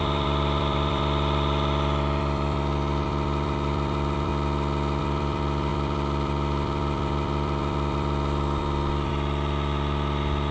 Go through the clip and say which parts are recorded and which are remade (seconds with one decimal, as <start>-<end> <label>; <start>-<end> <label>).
0.0-4.3 remade; 4.3-5.0 recorded; 5.0-10.5 remade